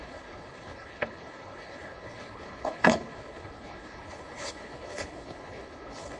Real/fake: fake